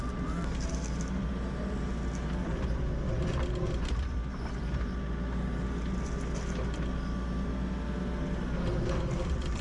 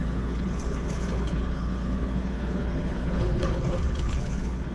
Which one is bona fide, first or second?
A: first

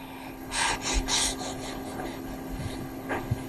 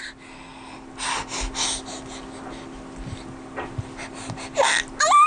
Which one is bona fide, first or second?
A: second